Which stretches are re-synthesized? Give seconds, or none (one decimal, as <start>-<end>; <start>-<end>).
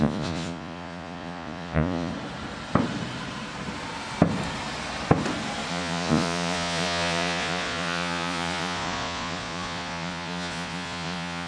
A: 0.0-2.1; 5.7-11.5